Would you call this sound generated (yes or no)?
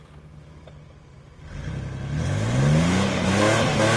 no